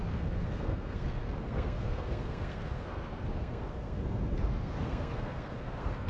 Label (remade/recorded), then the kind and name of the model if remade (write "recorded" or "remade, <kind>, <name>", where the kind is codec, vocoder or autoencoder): remade, codec, SNAC